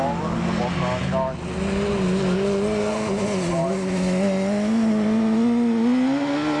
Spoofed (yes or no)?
no